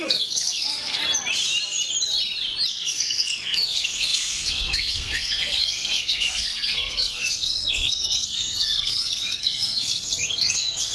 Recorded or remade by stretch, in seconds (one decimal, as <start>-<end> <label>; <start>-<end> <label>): 0.0-1.0 remade; 1.0-2.7 recorded; 2.7-10.9 remade

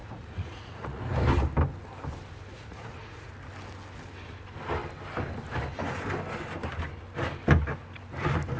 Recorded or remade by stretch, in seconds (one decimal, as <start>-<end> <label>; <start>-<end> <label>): 0.0-1.0 remade; 1.0-2.5 recorded; 2.5-3.3 remade; 3.3-8.6 recorded

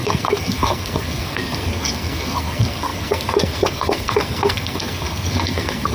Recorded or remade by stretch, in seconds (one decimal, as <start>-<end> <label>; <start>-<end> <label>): 0.0-5.9 remade

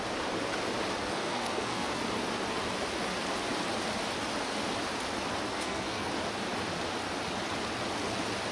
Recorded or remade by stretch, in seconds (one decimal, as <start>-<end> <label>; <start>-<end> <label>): 0.0-1.0 recorded; 1.0-2.0 remade; 2.0-5.5 recorded; 5.5-6.1 remade; 6.1-8.5 recorded

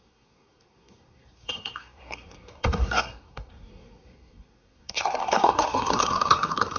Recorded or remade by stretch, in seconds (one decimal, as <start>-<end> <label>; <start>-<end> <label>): 0.0-6.8 remade

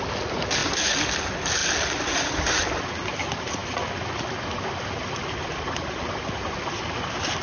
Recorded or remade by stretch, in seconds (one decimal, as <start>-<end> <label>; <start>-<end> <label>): 0.0-7.4 recorded